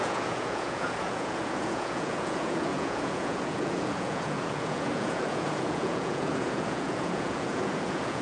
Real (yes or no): no